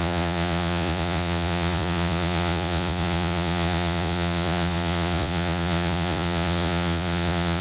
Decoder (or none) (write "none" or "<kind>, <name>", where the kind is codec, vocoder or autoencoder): vocoder, Vocos